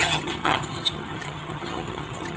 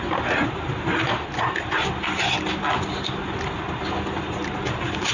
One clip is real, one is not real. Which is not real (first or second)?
first